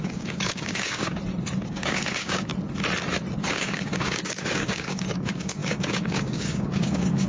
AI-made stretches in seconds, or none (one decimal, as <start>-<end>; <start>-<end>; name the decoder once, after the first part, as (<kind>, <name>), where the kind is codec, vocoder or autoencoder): 0.0-1.2 (codec, DAC); 1.7-2.5; 3.5-7.3